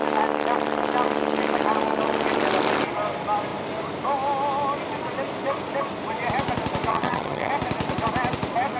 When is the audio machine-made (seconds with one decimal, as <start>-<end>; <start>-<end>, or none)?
6.9-7.5